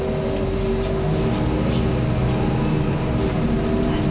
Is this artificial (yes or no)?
no